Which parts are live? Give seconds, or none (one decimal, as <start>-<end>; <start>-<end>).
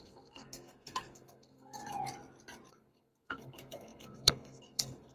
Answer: 1.8-2.7